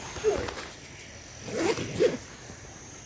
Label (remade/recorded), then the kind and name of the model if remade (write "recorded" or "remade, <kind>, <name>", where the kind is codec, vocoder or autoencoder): recorded